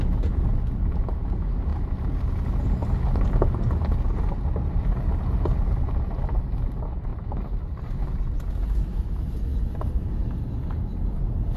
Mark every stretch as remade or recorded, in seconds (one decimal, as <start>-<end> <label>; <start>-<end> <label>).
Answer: 0.0-11.6 recorded